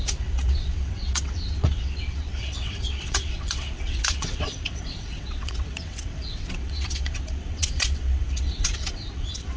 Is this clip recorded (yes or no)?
no